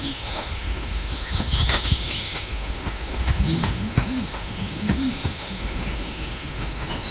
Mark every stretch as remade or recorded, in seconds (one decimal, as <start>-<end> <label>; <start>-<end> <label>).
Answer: 0.0-7.1 remade